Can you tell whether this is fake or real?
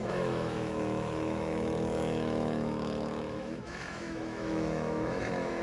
fake